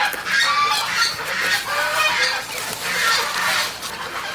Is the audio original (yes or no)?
yes